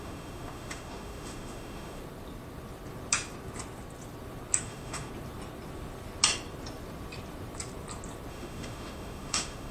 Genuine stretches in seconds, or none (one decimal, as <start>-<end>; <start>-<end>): 2.0-4.6; 5.1-8.3